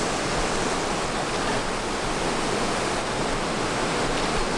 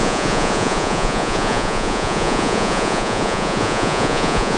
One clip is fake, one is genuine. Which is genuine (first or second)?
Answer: first